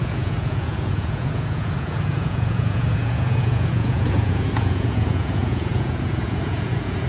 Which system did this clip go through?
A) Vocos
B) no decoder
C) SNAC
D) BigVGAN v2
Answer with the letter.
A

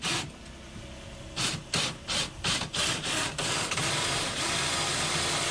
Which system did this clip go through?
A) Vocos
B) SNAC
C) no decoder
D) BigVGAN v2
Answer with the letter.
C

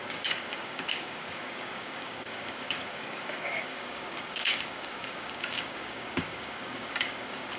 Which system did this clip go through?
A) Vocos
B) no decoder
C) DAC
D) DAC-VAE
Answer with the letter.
C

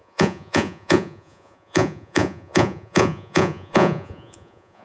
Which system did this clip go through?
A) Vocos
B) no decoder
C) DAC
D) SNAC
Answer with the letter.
A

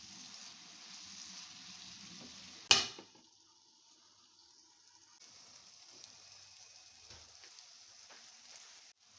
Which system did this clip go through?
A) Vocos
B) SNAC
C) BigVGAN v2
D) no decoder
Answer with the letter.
D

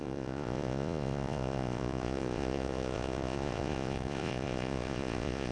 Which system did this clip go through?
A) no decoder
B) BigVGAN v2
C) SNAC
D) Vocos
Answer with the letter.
D